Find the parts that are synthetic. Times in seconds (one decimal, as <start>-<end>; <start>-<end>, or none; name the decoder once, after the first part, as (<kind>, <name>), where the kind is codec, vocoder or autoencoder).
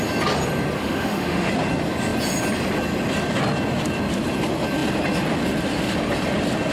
0.8-1.5 (autoencoder, DAC-VAE)